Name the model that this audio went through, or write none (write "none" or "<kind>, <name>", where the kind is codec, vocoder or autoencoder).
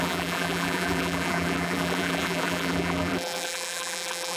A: vocoder, BigVGAN v2